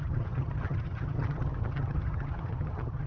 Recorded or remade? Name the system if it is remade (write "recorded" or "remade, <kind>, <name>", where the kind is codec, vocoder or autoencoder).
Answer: remade, vocoder, HiFi-GAN